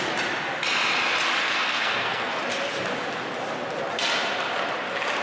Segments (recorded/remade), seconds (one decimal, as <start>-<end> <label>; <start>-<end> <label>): 0.0-1.4 recorded; 1.4-2.4 remade; 2.4-5.2 recorded